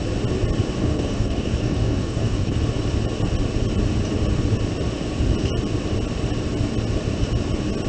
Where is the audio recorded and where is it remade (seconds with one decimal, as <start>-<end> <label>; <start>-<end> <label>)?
0.0-0.8 recorded; 0.8-2.6 remade; 2.6-7.9 recorded